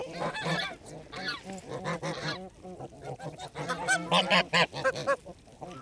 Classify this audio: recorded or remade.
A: recorded